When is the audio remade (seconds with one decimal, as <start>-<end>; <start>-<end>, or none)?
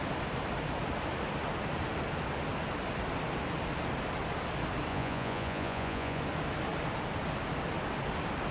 4.9-6.2